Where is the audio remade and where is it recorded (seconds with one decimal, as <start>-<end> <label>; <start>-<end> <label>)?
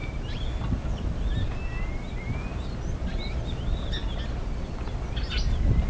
0.0-5.9 recorded